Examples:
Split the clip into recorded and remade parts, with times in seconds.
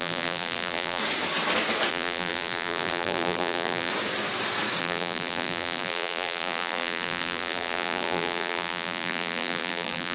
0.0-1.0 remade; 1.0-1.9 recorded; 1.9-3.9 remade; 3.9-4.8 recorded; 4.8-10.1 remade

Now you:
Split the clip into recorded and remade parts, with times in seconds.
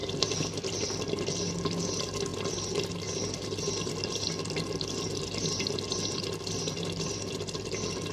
0.0-8.1 recorded